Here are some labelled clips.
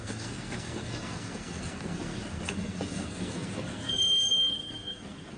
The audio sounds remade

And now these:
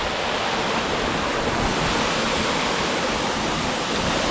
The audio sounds recorded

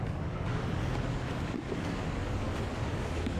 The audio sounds remade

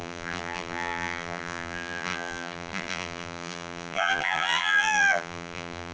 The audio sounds remade